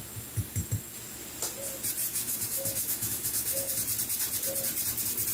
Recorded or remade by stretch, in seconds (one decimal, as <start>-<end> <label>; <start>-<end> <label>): 0.0-2.1 recorded; 2.1-3.7 remade; 3.7-5.3 recorded